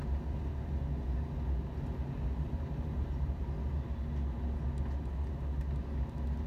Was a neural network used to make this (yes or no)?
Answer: no